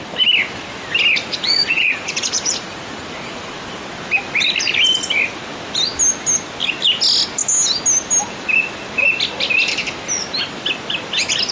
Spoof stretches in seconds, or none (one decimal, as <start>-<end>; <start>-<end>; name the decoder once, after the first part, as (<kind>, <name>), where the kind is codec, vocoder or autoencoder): 1.2-3.6 (vocoder, Vocos)